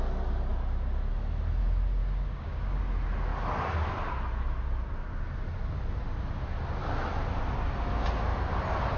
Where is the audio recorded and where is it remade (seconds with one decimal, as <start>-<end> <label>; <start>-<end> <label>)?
0.0-2.0 recorded; 2.0-2.8 remade; 2.8-9.0 recorded